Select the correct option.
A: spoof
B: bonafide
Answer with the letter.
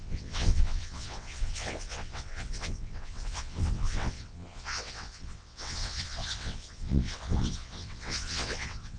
A